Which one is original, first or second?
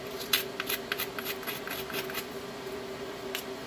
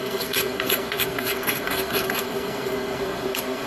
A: first